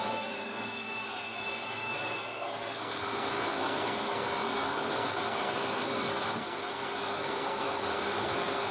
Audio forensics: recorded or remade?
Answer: remade